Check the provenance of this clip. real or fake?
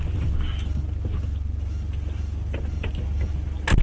real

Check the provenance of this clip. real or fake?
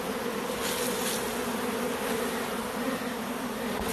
real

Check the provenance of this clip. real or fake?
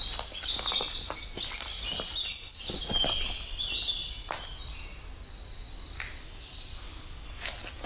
real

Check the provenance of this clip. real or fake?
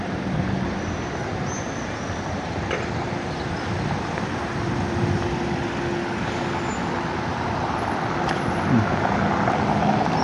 real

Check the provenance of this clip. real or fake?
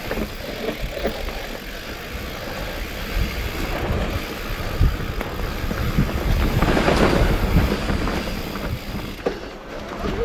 real